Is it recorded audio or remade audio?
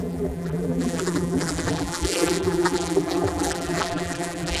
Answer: remade